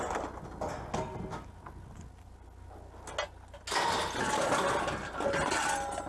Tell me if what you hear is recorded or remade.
recorded